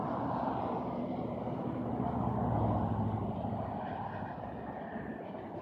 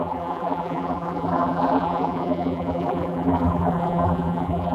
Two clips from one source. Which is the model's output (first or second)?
second